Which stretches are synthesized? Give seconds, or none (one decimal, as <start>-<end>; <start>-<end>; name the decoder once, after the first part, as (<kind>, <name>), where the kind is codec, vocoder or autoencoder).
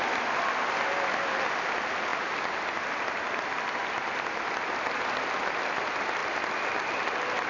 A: none